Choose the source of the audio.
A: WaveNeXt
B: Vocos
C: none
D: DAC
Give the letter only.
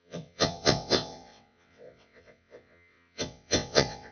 A